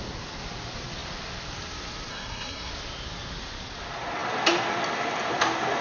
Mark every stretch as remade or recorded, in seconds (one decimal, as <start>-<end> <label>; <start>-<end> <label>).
0.0-2.1 recorded; 2.1-2.7 remade; 2.7-5.8 recorded